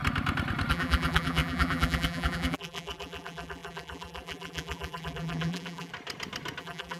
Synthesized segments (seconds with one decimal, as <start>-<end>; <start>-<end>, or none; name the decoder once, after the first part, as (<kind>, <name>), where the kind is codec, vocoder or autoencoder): 0.7-5.9 (vocoder, BigVGAN v2); 6.6-7.0